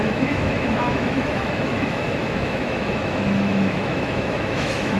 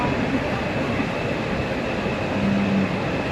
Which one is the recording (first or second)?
second